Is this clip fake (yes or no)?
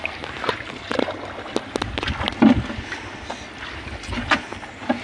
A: no